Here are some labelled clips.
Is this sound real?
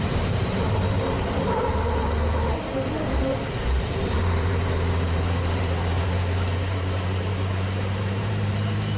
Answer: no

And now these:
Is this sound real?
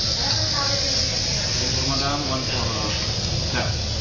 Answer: yes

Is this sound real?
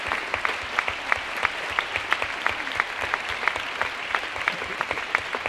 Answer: yes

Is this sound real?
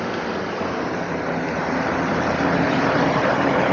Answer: no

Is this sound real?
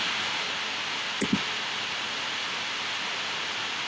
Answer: yes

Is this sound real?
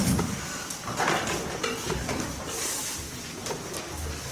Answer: yes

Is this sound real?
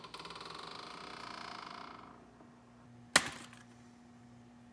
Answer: yes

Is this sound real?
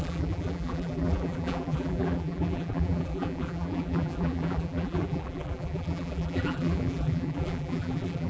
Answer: no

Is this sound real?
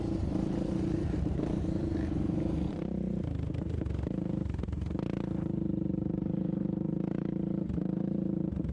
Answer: no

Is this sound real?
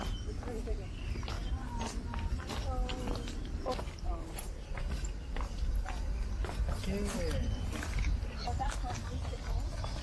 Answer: yes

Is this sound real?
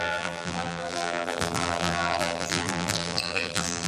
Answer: no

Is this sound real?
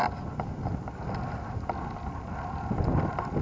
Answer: yes